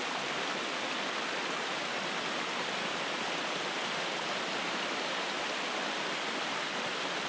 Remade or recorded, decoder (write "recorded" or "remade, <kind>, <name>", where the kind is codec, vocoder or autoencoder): recorded